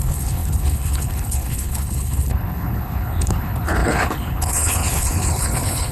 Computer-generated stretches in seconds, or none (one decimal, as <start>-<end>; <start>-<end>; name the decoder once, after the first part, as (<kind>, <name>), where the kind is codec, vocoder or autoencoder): 0.0-5.9 (codec, HILCodec)